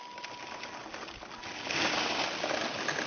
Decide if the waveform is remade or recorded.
recorded